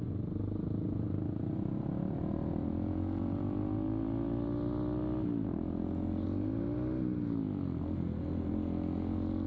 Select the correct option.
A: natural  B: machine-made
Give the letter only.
A